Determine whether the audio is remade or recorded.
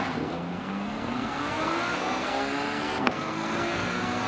remade